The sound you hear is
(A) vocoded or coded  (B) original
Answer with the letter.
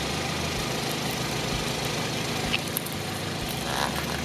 B